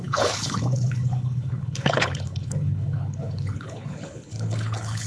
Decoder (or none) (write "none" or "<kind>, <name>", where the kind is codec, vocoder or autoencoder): codec, HILCodec